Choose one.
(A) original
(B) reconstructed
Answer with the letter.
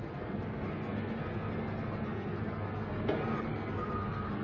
B